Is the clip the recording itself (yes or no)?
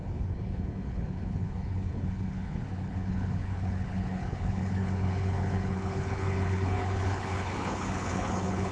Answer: no